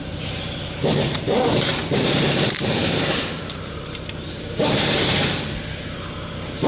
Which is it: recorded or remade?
remade